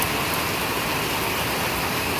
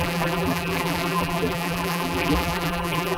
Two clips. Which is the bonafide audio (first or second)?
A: first